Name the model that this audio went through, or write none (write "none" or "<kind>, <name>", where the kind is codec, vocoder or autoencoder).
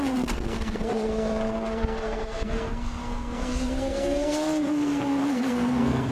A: codec, SNAC